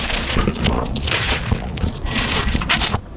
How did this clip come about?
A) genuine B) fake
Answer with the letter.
B